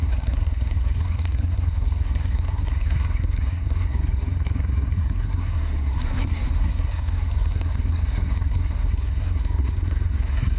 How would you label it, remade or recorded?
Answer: remade